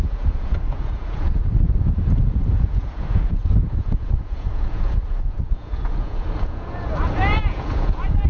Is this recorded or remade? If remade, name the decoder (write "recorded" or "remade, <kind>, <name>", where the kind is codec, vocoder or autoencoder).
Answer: remade, vocoder, Vocos